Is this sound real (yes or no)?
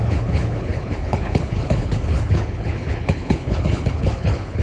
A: no